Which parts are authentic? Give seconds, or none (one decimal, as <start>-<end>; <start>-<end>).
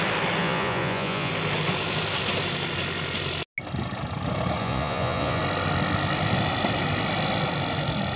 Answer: 0.0-0.4; 1.3-4.6; 5.4-8.2